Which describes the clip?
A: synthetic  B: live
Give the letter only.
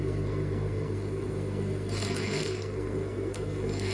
A